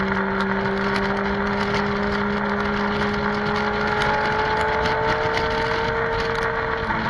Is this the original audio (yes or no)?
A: yes